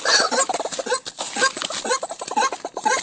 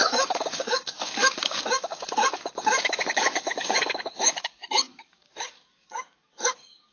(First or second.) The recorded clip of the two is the first